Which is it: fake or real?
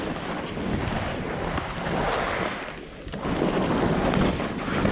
real